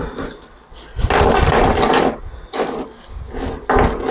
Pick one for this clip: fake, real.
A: real